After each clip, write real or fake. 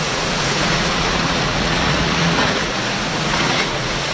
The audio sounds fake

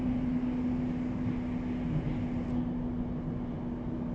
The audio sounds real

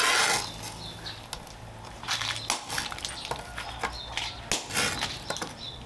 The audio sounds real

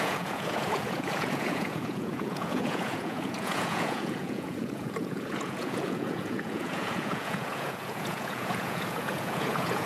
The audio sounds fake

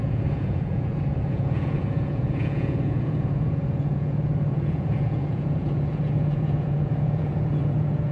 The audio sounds fake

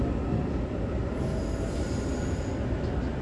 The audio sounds real